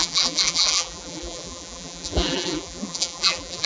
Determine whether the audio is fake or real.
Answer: fake